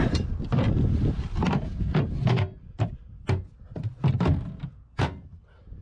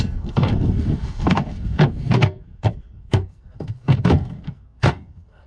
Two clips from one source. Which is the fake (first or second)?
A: second